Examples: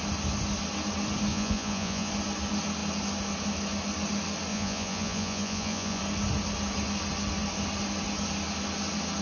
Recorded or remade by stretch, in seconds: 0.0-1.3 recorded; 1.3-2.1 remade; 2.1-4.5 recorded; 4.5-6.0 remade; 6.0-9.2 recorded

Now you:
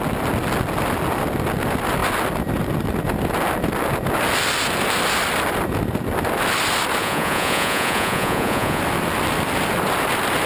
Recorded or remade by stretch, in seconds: 0.0-7.0 recorded; 7.0-8.8 remade; 8.8-10.5 recorded

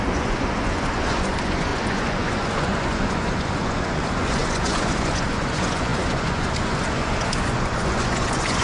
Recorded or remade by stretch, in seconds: 0.0-8.6 remade

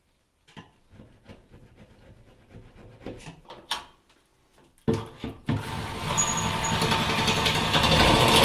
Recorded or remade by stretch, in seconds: 0.0-8.4 recorded

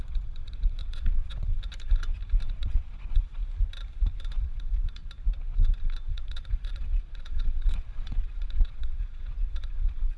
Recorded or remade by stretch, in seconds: 0.0-1.5 remade; 1.5-2.5 recorded; 2.5-3.4 remade; 3.4-4.4 recorded; 4.4-5.0 remade; 5.0-6.1 recorded; 6.1-10.2 remade

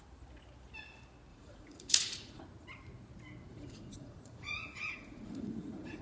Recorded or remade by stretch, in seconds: 0.0-1.3 recorded; 1.3-2.4 remade; 2.4-3.5 recorded; 3.5-6.0 remade